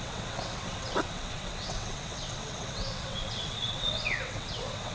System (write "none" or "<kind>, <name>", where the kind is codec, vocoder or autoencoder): vocoder, WaveNeXt